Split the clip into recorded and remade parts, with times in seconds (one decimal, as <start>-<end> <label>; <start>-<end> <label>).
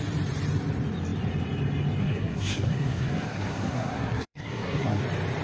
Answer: 0.0-2.0 recorded; 2.0-5.0 remade; 5.0-5.4 recorded